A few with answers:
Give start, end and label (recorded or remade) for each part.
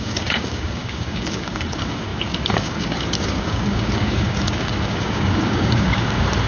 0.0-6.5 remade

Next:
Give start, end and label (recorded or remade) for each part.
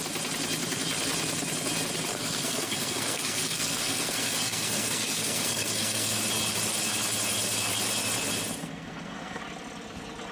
0.0-2.1 recorded; 2.1-6.2 remade; 6.2-8.6 recorded; 8.6-9.4 remade; 9.4-10.3 recorded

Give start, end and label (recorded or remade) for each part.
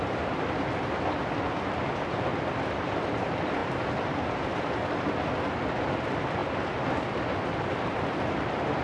0.0-3.6 recorded; 3.6-4.7 remade; 4.7-8.8 recorded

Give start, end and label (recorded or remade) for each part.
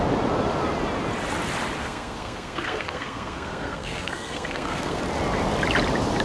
0.0-1.8 recorded; 1.8-5.0 remade; 5.0-6.2 recorded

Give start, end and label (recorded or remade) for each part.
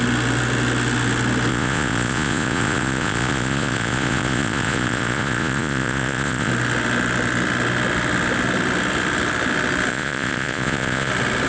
0.0-1.5 recorded; 1.5-6.5 remade; 6.5-9.9 recorded; 9.9-11.1 remade; 11.1-11.5 recorded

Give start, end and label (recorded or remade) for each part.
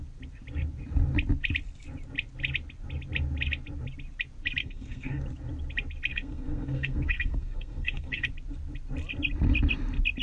0.0-4.6 recorded; 4.6-5.2 remade; 5.2-6.1 recorded; 6.1-8.3 remade; 8.3-10.2 recorded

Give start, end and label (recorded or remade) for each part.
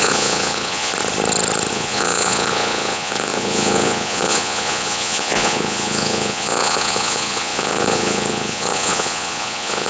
0.0-0.9 remade; 0.9-1.7 recorded; 1.7-9.9 remade